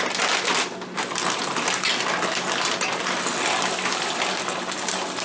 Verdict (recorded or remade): recorded